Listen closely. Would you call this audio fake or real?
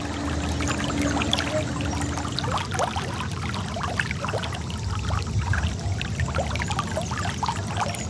real